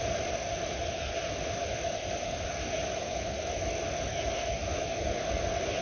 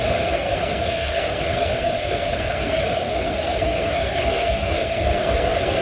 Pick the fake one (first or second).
second